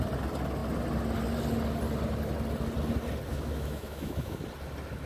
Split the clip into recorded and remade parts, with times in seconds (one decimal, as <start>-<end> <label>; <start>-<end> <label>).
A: 0.0-3.3 recorded; 3.3-4.4 remade; 4.4-5.1 recorded